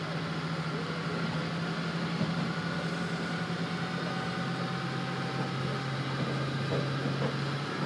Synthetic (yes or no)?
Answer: no